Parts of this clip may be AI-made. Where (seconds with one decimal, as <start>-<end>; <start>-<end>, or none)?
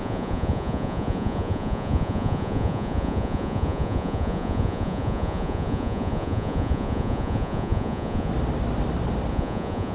0.0-8.3; 9.3-9.9